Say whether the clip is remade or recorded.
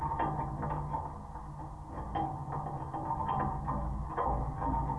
recorded